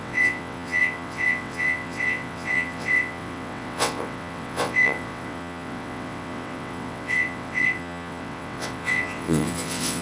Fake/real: fake